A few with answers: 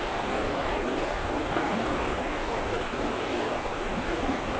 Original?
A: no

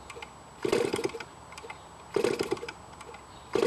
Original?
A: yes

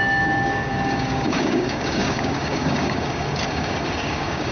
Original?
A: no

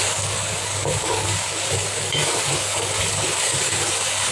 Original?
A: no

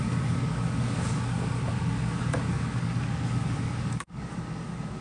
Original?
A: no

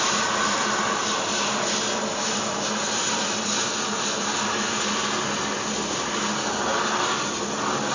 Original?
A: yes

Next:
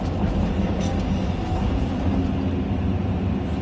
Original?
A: yes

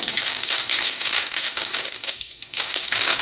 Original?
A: no